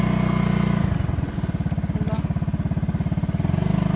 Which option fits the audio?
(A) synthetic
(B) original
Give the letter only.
B